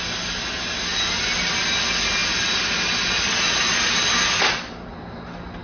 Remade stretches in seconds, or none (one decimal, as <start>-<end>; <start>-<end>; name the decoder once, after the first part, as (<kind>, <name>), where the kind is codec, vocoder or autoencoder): none